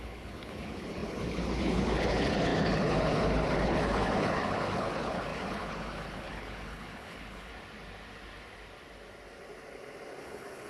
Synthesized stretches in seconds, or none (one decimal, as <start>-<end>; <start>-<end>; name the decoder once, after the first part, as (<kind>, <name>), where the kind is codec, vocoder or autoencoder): 0.0-7.5 (codec, HILCodec); 10.2-10.7